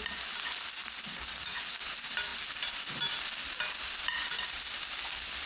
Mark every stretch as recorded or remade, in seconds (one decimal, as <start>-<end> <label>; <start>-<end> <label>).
0.0-5.5 recorded